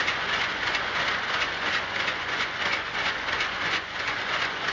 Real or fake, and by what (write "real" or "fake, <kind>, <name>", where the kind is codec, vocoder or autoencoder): fake, vocoder, Vocos